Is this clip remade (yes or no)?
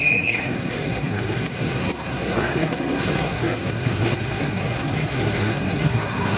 yes